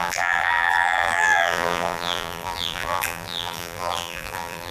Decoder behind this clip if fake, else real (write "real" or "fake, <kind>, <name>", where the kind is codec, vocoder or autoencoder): fake, vocoder, BigVGAN v2